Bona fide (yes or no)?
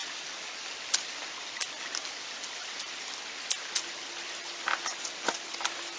yes